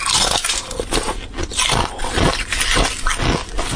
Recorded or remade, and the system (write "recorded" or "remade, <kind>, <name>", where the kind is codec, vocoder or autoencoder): recorded